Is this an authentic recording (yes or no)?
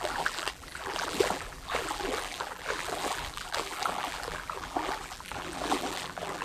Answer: no